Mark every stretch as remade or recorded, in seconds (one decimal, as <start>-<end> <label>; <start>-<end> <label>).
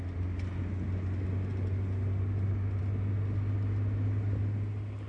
0.0-5.1 recorded